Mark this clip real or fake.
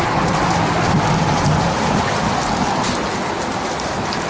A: real